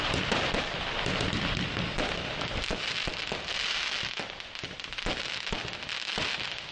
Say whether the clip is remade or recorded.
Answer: recorded